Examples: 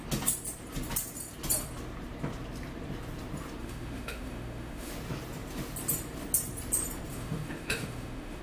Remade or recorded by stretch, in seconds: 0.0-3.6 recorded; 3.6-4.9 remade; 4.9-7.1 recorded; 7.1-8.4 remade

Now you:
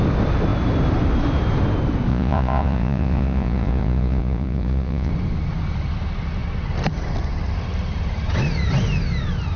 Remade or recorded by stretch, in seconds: 0.0-2.1 recorded; 2.1-5.1 remade; 5.1-9.6 recorded